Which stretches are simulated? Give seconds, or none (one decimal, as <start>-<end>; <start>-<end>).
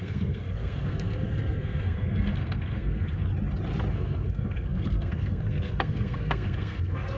0.0-3.3; 3.9-7.2